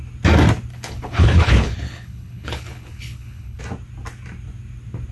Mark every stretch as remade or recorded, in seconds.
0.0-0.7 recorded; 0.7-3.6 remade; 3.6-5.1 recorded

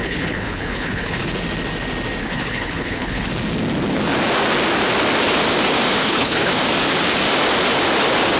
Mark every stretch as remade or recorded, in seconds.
0.0-1.3 remade; 1.3-2.2 recorded; 2.2-3.3 remade; 3.3-6.0 recorded; 6.0-6.5 remade; 6.5-8.4 recorded

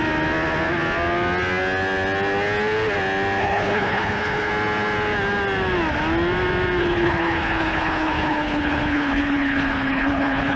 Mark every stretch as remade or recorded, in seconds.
0.0-3.4 recorded; 3.4-4.5 remade; 4.5-6.8 recorded; 6.8-10.6 remade